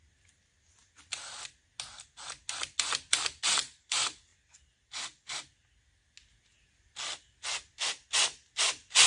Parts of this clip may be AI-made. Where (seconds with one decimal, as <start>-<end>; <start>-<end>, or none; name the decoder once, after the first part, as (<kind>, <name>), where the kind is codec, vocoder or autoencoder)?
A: none